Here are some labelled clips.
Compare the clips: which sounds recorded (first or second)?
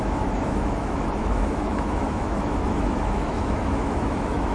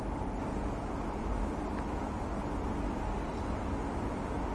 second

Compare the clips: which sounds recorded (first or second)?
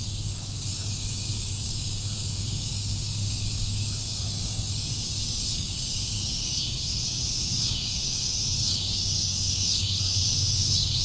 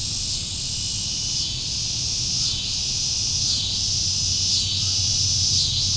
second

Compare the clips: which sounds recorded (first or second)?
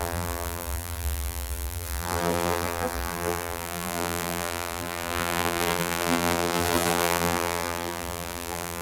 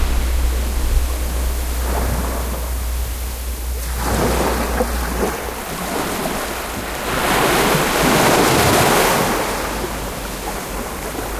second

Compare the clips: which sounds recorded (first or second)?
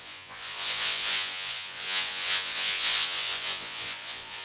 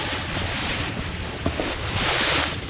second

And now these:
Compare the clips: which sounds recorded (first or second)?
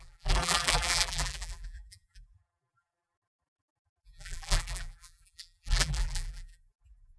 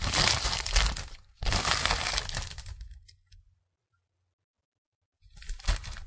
second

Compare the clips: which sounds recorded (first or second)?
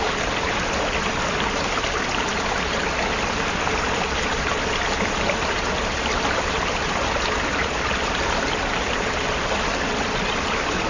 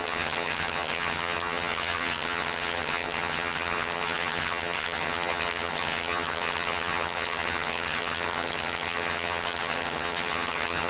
first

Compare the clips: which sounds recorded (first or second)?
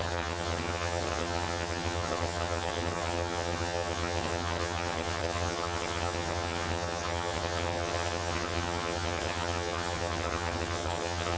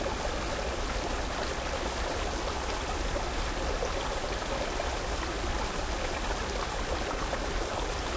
second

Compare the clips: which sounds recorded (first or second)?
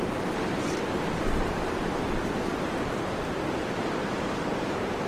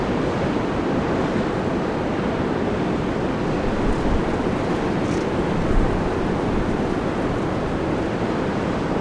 second